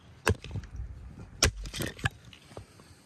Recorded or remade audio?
recorded